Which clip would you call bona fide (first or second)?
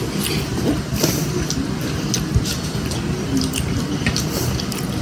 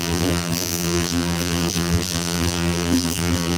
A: first